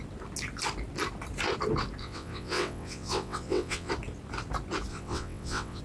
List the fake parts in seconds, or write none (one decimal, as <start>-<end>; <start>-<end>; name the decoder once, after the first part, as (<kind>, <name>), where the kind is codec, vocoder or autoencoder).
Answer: 2.0-3.9 (vocoder, WaveNeXt); 4.9-5.8